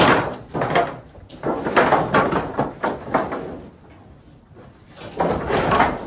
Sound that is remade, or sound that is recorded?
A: recorded